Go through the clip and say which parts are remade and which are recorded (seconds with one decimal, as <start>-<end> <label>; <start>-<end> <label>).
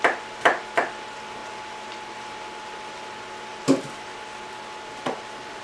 0.0-5.6 recorded